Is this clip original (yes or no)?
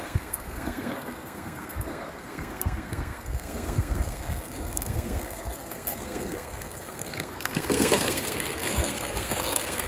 no